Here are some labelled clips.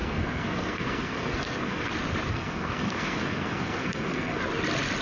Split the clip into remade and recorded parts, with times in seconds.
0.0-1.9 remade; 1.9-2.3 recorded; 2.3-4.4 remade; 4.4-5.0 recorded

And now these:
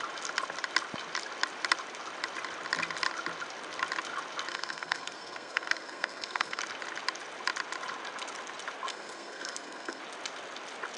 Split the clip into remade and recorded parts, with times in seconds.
0.0-4.5 recorded; 4.5-6.6 remade; 6.6-8.9 recorded; 8.9-10.0 remade; 10.0-11.0 recorded

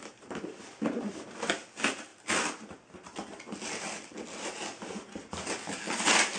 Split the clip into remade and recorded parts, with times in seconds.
0.0-6.4 recorded

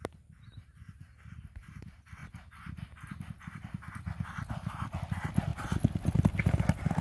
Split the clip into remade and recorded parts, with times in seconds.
0.0-7.0 recorded